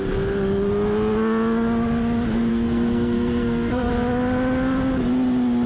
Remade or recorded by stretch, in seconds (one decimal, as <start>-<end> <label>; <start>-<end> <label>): 0.0-2.5 recorded; 2.5-3.9 remade; 3.9-5.7 recorded